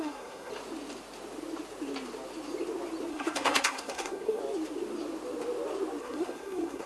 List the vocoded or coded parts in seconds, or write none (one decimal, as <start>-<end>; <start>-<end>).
0.0-0.5; 3.1-4.4; 6.0-6.9